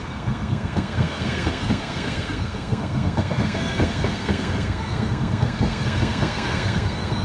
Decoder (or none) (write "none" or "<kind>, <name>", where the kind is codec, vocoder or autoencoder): codec, SNAC